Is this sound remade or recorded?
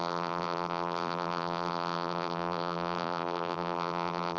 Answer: remade